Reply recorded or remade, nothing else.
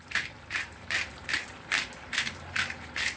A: remade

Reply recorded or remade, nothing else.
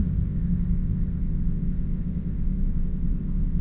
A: remade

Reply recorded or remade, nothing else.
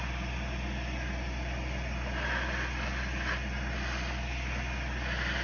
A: recorded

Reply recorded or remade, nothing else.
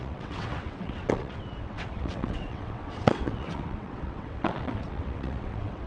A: remade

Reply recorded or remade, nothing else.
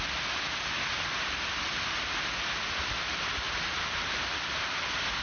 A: recorded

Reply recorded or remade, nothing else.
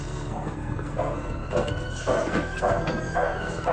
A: remade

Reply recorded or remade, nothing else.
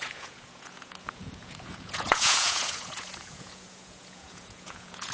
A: remade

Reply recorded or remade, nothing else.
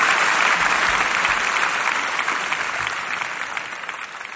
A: recorded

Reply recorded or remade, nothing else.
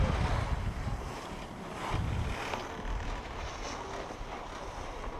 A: recorded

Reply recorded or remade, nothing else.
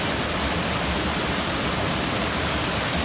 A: recorded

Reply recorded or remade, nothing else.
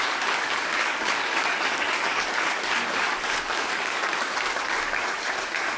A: remade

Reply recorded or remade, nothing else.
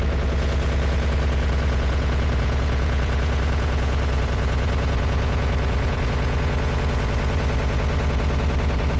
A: remade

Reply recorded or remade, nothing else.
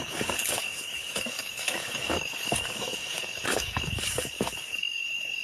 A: remade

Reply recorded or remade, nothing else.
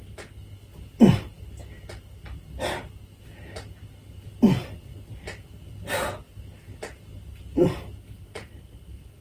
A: recorded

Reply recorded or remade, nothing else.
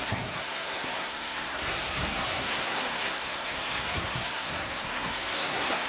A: remade